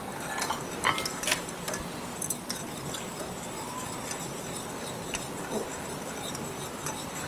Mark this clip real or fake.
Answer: real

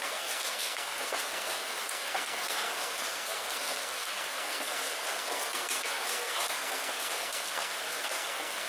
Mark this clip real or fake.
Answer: fake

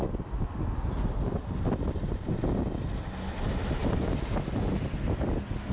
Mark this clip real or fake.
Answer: real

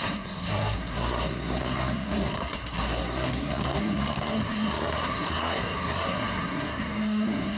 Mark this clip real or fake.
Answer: fake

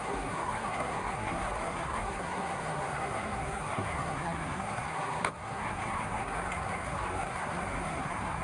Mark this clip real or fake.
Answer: fake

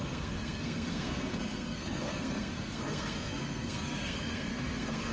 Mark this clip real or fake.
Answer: fake